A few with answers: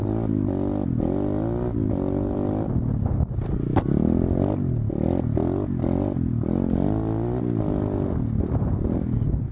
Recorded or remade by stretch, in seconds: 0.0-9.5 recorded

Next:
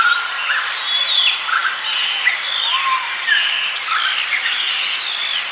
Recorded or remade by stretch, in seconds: 0.0-5.5 remade